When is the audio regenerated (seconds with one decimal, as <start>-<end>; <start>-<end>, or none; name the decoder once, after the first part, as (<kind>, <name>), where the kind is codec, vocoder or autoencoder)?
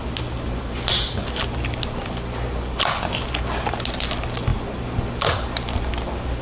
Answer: none